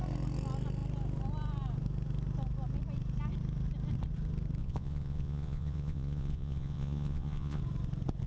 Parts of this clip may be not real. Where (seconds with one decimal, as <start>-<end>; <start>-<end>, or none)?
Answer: 4.6-7.6